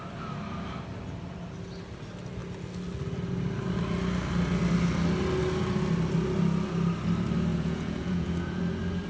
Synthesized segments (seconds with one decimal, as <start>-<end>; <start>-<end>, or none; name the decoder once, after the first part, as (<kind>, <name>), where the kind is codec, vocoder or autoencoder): 7.5-8.6 (vocoder, Vocos)